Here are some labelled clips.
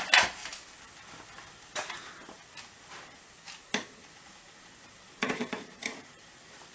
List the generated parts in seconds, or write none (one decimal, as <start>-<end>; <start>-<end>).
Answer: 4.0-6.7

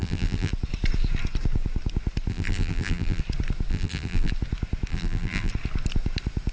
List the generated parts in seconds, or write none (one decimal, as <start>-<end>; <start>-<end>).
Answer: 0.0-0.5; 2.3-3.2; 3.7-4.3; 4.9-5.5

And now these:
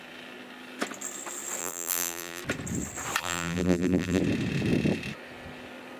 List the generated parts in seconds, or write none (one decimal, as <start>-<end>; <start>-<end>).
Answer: 1.6-2.4; 3.2-4.2

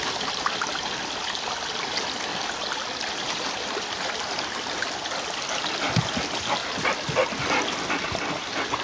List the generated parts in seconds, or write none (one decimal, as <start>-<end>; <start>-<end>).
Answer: 0.8-1.9; 2.3-4.1

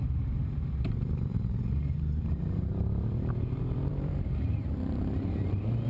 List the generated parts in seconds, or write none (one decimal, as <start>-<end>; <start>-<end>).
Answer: 0.0-4.6; 5.3-5.9

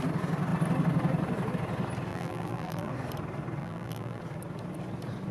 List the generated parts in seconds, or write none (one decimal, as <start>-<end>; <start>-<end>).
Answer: 2.1-2.9; 3.6-4.2

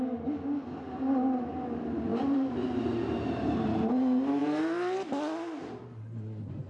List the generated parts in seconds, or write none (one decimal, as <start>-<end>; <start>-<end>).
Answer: 4.4-5.1